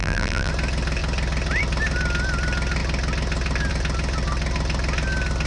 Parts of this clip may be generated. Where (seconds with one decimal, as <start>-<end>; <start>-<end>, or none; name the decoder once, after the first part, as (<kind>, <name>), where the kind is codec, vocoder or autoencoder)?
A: 0.0-0.5 (vocoder, BigVGAN v2)